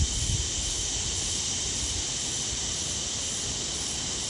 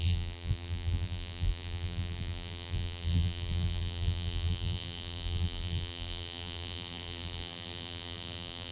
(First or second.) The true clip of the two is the first